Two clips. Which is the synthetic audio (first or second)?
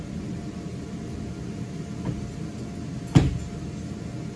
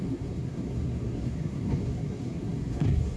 second